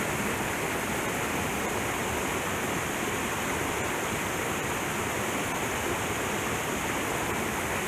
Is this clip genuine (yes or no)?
yes